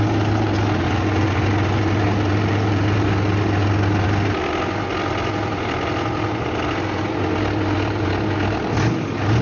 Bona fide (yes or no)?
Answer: yes